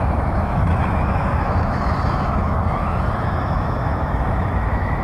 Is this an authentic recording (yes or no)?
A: no